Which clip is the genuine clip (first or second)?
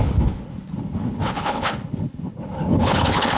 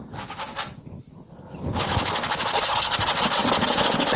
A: second